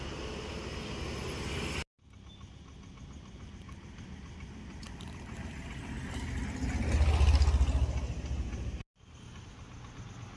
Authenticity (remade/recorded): recorded